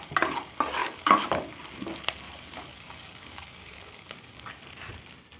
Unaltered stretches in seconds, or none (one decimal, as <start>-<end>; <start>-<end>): 0.0-0.8; 1.3-2.7; 4.5-5.4